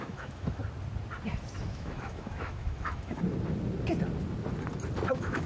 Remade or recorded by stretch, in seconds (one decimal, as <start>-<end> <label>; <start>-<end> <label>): 0.0-0.6 remade; 0.6-1.7 recorded; 1.7-3.2 remade; 3.2-5.1 recorded; 5.1-5.5 remade